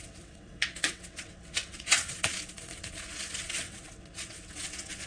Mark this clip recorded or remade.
remade